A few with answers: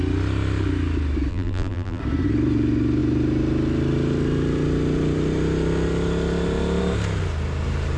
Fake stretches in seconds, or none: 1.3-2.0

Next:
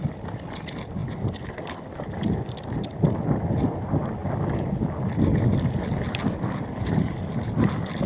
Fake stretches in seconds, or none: none

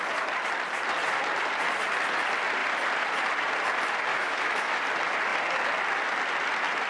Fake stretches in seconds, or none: 4.1-4.8

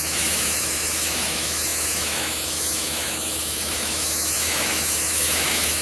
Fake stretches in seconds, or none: 0.0-5.8

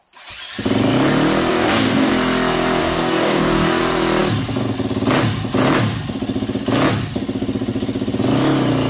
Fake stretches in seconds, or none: 1.5-2.1; 2.8-3.8

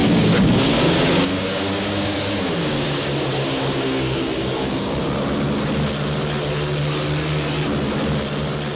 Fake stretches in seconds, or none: 0.0-4.9